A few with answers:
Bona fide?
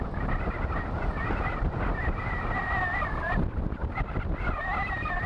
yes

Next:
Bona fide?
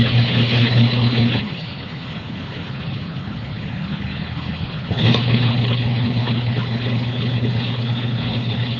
no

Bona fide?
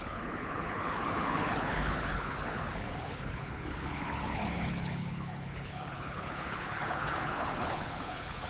no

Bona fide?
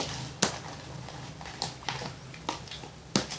yes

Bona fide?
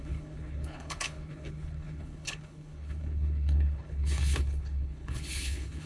no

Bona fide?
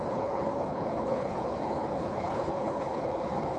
no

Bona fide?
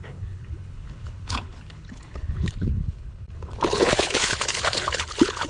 no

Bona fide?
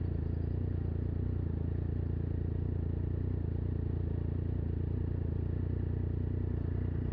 yes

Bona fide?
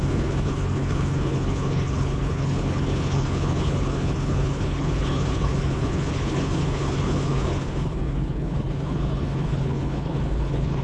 no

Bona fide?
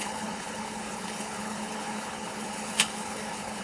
no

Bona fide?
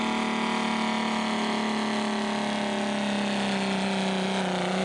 yes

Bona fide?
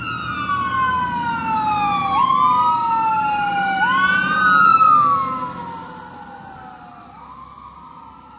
yes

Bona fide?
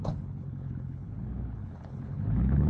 no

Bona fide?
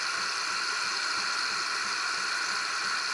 yes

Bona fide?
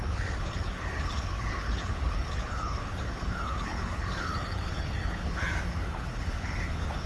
no